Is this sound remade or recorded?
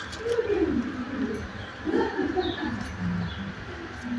remade